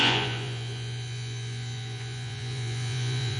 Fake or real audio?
fake